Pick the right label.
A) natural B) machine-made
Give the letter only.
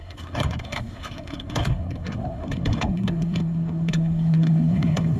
B